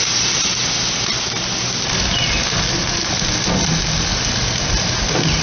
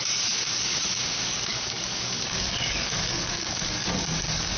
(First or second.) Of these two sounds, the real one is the first